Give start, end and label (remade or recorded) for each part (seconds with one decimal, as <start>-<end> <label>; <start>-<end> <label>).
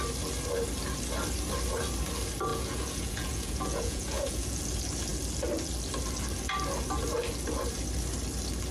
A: 0.0-2.5 recorded; 2.5-4.6 remade; 4.6-8.7 recorded